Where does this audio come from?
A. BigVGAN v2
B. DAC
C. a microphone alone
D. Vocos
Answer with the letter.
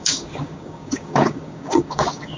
B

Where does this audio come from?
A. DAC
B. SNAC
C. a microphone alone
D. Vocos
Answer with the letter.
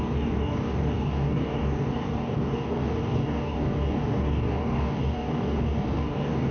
A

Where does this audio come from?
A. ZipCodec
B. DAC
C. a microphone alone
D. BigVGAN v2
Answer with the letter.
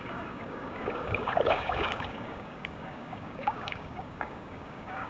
B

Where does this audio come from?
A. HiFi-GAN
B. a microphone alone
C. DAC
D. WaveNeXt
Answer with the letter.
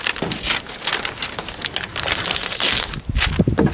B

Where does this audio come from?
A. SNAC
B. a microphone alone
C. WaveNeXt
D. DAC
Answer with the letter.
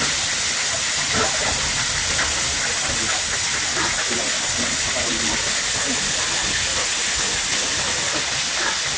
B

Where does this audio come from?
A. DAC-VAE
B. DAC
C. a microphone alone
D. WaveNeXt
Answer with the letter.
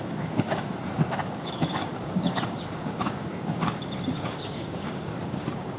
B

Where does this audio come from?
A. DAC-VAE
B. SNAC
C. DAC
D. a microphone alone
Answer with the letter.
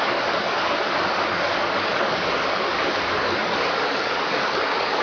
C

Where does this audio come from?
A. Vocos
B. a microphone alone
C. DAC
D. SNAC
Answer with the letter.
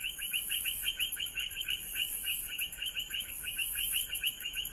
C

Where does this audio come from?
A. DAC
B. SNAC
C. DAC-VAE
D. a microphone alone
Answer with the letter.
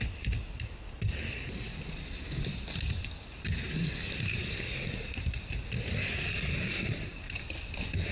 D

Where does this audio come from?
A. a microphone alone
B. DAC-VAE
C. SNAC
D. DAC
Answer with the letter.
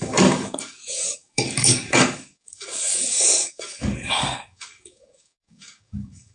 D